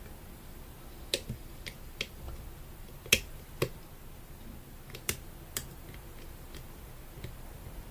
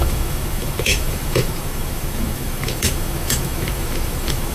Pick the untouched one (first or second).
first